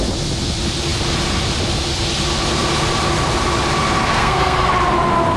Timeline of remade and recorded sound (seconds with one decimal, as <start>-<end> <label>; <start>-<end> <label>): 0.0-4.1 recorded; 4.1-4.7 remade; 4.7-5.4 recorded